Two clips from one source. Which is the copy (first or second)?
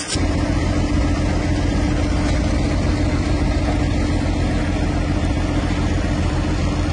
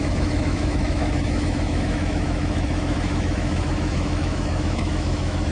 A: second